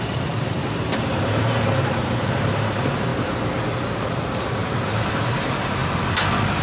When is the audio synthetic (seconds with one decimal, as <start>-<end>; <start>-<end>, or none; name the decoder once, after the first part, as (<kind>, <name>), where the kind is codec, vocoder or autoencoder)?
0.0-3.1 (vocoder, BigVGAN v2); 4.0-5.8